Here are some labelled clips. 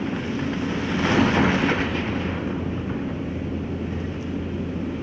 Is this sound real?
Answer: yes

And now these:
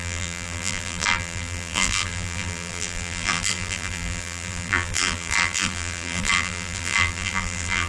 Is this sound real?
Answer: no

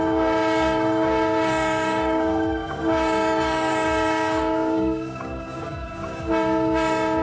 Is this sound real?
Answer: no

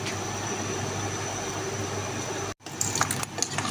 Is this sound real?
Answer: yes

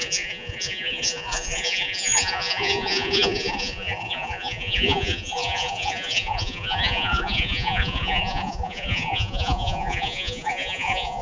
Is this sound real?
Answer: no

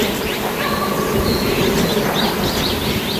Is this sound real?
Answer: yes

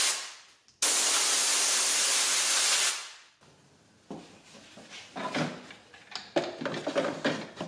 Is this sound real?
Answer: yes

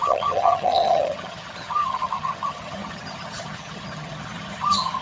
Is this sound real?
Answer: no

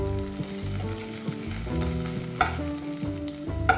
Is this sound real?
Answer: yes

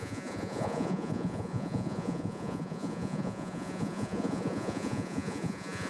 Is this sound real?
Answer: no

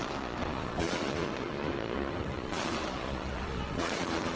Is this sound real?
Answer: no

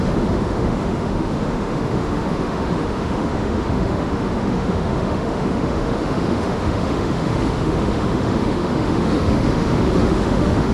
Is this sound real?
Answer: no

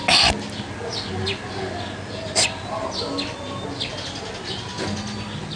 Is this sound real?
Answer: yes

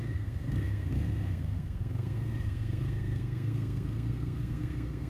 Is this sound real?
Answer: no